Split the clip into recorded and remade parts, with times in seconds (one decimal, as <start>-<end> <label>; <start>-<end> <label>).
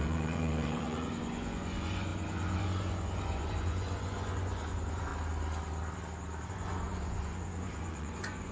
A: 0.0-5.1 remade; 5.1-6.5 recorded; 6.5-8.5 remade